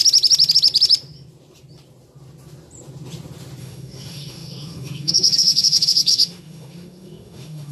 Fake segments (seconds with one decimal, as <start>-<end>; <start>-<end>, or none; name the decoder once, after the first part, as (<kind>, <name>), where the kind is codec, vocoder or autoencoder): 3.6-7.7 (autoencoder, DAC-VAE)